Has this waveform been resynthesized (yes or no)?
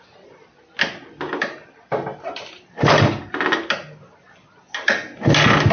no